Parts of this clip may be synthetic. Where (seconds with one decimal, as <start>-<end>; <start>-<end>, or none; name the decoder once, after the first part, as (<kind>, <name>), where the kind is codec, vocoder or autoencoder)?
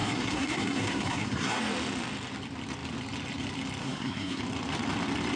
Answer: 0.0-1.6 (codec, SNAC); 3.8-4.4